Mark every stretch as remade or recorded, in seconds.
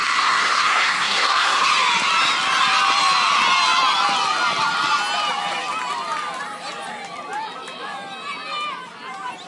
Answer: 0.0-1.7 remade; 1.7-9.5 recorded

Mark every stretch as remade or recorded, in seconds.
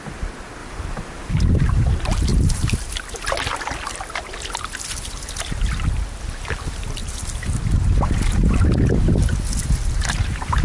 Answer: 0.0-0.6 recorded; 0.6-1.3 remade; 1.3-2.3 recorded; 2.3-2.9 remade; 2.9-7.0 recorded; 7.0-7.5 remade; 7.5-10.6 recorded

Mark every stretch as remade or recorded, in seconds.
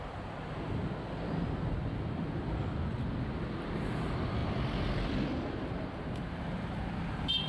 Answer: 0.0-4.4 recorded; 4.4-6.0 remade; 6.0-7.5 recorded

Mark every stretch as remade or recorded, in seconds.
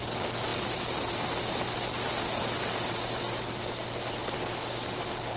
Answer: 0.0-5.4 recorded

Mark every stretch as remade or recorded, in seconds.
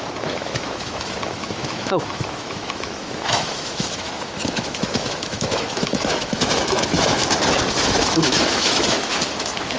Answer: 0.0-7.2 remade; 7.2-7.7 recorded; 7.7-9.8 remade